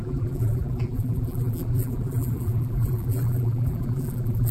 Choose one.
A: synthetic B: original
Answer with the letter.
A